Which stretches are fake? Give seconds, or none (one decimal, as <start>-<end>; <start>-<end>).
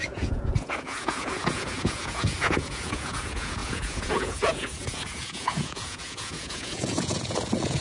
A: 0.0-7.8